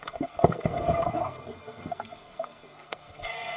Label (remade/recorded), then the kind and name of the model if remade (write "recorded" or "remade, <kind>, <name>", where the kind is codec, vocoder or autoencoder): remade, codec, SNAC